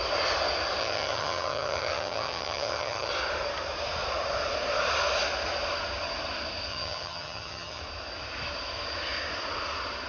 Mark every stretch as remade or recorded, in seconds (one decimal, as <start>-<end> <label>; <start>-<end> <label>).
0.0-0.8 recorded; 0.8-3.1 remade; 3.1-6.7 recorded; 6.7-7.8 remade; 7.8-10.1 recorded